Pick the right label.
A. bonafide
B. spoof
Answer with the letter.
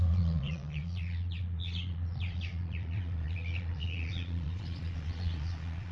B